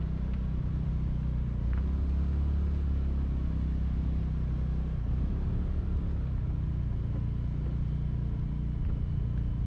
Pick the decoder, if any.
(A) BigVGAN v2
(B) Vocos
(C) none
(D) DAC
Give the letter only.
C